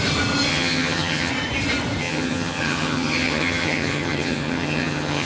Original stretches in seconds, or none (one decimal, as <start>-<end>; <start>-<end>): 0.0-0.5; 1.3-2.0